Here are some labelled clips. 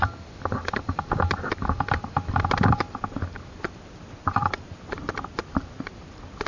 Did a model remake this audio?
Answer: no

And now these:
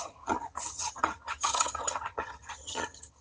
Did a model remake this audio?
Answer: yes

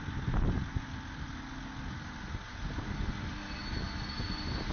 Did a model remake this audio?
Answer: no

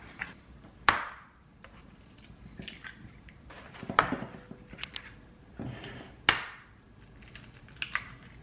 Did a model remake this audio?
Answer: no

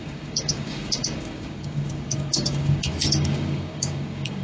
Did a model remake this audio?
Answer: yes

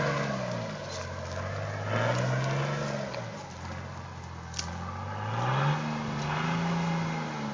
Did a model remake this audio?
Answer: no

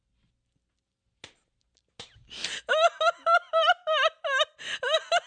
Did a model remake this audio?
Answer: no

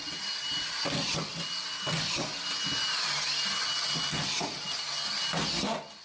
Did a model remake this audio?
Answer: no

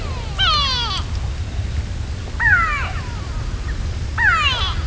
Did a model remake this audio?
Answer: no